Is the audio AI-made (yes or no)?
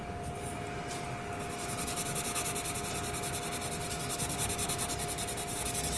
no